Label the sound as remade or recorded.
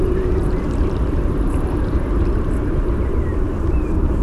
remade